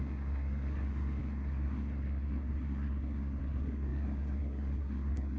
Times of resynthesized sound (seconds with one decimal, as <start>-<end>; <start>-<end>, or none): 0.0-5.4